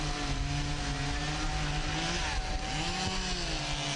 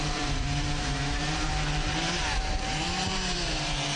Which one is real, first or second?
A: first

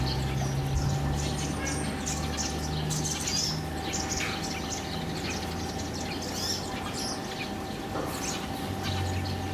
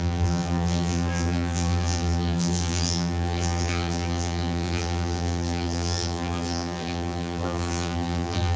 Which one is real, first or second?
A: first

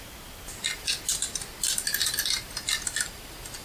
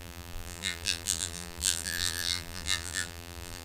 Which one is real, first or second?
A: first